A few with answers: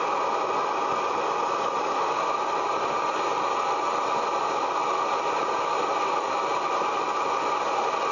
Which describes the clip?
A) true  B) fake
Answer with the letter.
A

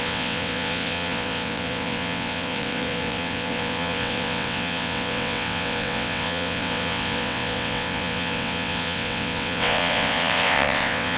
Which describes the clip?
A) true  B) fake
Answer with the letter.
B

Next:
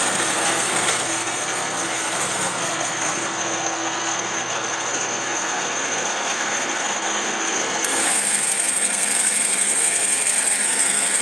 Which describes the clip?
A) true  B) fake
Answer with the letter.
B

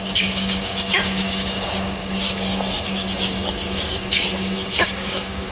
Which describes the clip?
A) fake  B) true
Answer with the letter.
A